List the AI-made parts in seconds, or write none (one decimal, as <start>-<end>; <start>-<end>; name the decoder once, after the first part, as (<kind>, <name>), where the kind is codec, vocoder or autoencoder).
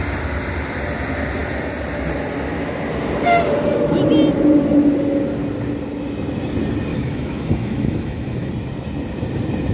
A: 6.9-8.5 (autoencoder, DAC-VAE)